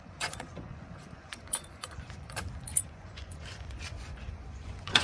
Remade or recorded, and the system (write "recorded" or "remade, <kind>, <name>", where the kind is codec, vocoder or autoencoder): remade, vocoder, Vocos